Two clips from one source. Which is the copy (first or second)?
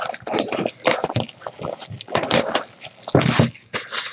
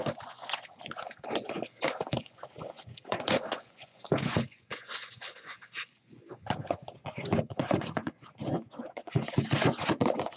second